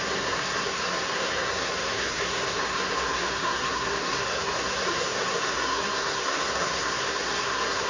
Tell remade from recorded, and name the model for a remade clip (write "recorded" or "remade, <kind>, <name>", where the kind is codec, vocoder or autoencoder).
remade, codec, SNAC